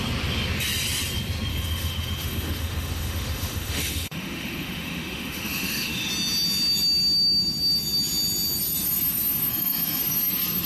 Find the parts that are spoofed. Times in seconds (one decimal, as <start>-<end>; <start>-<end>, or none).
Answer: 1.5-6.1; 9.5-10.0